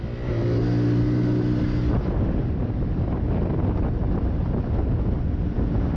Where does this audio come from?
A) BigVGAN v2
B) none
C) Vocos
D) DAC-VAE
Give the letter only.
B